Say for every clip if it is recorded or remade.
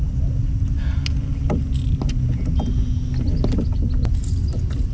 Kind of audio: recorded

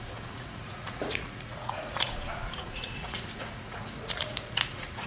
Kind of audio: remade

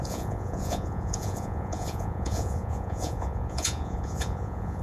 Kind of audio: remade